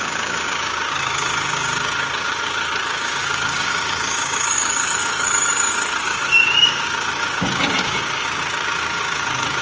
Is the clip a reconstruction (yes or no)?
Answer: yes